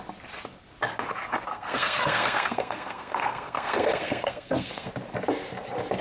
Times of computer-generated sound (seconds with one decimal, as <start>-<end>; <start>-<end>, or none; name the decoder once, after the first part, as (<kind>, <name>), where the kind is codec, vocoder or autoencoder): 1.5-4.9 (codec, SNAC)